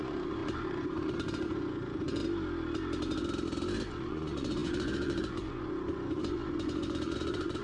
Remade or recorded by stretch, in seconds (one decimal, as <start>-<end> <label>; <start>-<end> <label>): 0.0-2.2 remade; 2.2-3.9 recorded; 3.9-7.6 remade